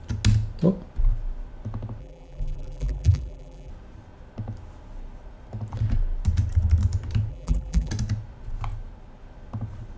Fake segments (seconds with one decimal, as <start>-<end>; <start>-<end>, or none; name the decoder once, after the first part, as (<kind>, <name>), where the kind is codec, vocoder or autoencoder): 2.0-3.7 (vocoder, BigVGAN v2); 7.3-7.9